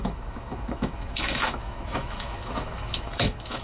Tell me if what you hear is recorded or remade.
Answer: remade